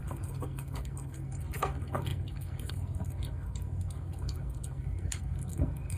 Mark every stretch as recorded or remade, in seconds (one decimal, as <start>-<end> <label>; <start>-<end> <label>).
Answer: 0.0-6.0 remade

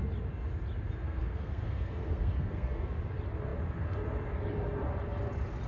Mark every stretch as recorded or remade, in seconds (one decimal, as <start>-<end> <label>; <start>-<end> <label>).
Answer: 0.0-1.0 recorded; 1.0-3.0 remade; 3.0-5.7 recorded

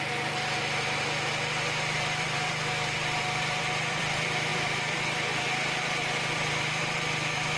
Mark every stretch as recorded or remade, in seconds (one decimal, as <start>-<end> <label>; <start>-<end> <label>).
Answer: 0.0-7.6 remade

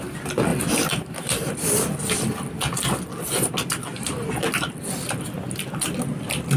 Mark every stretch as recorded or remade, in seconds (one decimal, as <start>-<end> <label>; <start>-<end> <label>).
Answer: 0.0-0.5 recorded; 0.5-1.6 remade; 1.6-6.6 recorded

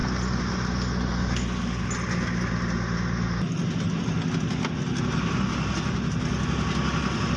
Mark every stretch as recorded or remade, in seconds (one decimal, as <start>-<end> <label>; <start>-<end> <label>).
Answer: 0.0-7.4 recorded

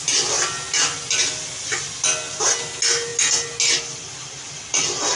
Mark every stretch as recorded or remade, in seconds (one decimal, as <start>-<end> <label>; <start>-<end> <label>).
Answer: 0.0-5.2 recorded

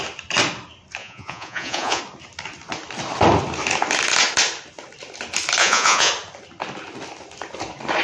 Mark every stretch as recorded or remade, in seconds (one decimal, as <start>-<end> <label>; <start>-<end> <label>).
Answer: 0.0-1.0 recorded; 1.0-2.0 remade; 2.0-5.6 recorded; 5.6-6.1 remade; 6.1-8.0 recorded

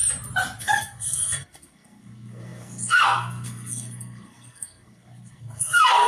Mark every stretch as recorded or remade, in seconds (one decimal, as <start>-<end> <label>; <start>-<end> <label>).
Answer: 0.0-0.6 recorded; 0.6-6.1 remade